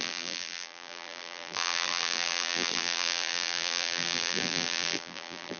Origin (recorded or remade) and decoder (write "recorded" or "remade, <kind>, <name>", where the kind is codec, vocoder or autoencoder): remade, vocoder, BigVGAN v2